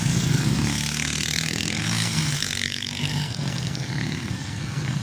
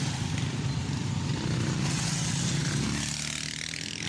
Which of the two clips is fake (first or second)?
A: first